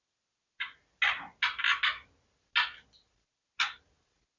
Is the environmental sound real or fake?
real